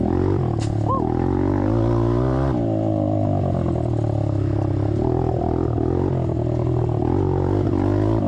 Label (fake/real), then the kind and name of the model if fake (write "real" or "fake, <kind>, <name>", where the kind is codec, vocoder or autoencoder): real